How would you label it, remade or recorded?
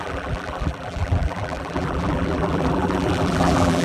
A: remade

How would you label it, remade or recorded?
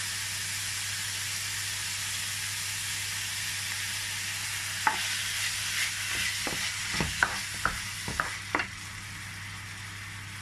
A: recorded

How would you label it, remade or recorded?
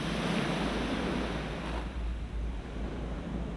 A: recorded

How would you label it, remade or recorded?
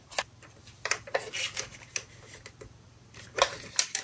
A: remade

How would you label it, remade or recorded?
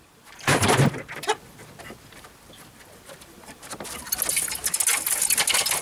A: recorded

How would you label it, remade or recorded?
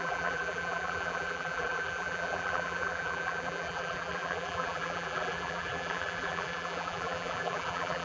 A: remade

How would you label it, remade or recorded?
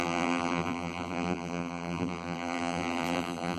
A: remade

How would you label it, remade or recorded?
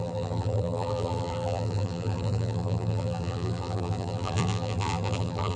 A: remade